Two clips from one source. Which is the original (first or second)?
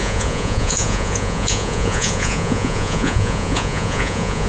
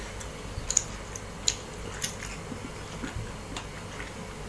second